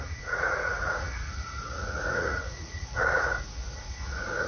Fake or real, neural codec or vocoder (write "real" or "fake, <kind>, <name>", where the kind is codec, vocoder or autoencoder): fake, vocoder, Vocos